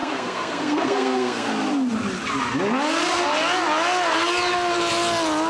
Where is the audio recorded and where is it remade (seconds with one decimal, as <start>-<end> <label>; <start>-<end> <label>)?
0.0-1.5 remade; 1.5-5.5 recorded